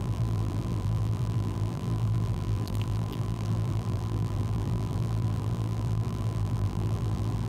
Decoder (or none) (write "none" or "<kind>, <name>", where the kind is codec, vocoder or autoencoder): vocoder, BigVGAN v2